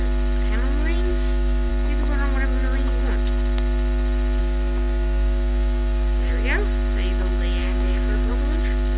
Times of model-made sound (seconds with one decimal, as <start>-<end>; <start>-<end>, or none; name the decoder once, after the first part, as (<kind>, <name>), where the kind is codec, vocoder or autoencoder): 1.1-1.7 (codec, DAC); 4.4-6.3; 7.6-8.3